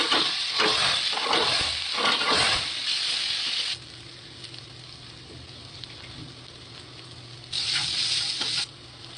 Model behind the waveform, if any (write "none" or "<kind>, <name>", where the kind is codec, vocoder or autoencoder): none